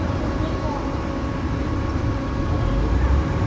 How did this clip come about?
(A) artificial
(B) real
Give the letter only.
B